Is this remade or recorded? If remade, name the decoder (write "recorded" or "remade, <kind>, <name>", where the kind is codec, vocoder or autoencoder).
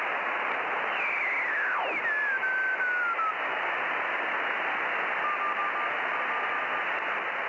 remade, vocoder, BigVGAN v2